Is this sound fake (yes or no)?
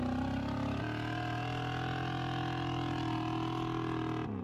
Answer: no